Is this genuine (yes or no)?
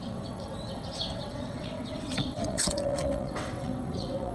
no